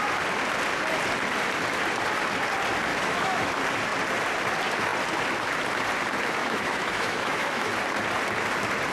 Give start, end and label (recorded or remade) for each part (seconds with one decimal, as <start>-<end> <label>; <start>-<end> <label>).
0.0-2.9 recorded; 2.9-3.5 remade; 3.5-6.4 recorded; 6.4-7.7 remade; 7.7-8.9 recorded